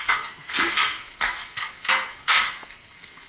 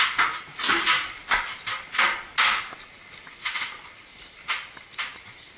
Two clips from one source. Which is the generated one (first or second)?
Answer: first